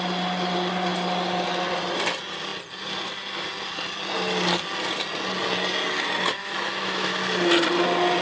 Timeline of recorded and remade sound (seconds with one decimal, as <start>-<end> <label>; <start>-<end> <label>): 0.0-6.4 recorded; 6.4-7.2 remade; 7.2-8.2 recorded